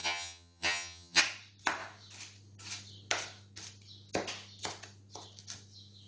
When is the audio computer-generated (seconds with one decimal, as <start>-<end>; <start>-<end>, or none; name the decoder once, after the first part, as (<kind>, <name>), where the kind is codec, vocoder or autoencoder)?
0.0-1.2 (vocoder, HiFi-GAN)

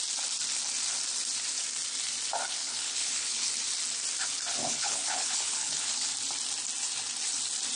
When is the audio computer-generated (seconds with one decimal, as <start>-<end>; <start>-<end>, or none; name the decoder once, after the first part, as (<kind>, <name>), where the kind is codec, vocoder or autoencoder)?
2.6-3.5 (codec, HILCodec); 4.6-6.1

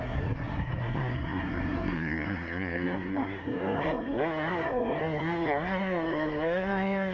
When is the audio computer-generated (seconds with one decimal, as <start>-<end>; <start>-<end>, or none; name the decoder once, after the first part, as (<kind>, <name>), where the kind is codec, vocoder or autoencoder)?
0.0-7.1 (codec, SNAC)

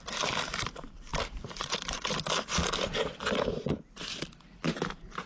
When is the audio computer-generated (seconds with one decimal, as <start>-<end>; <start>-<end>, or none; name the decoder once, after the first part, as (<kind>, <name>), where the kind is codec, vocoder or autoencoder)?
none

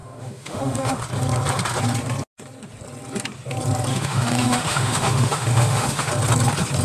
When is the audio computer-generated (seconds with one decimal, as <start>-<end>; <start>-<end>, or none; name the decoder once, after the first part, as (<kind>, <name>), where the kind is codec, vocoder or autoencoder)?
0.0-1.0 (autoencoder, DAC-VAE); 3.9-6.1